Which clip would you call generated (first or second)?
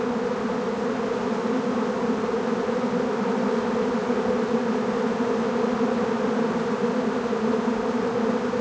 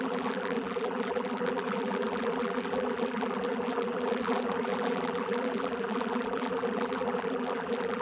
second